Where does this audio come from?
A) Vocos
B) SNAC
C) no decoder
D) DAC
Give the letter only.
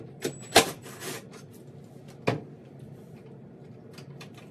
C